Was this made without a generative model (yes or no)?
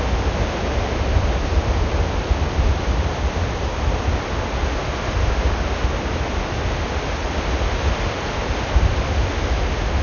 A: yes